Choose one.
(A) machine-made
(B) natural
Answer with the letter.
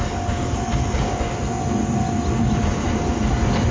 B